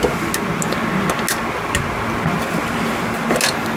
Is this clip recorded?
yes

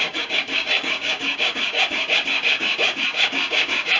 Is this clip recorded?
no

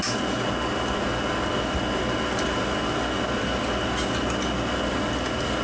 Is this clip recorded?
yes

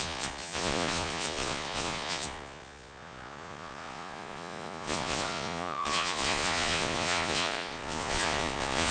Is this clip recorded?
no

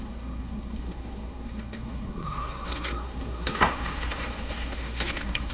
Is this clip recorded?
no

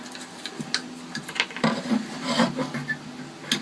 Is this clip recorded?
yes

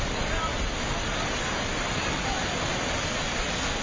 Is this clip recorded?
yes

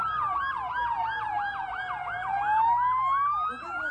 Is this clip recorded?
yes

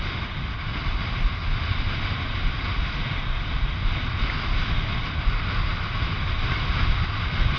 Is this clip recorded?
yes